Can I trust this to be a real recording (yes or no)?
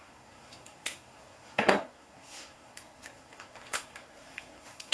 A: no